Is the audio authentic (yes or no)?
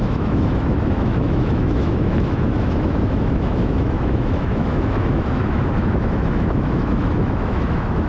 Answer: no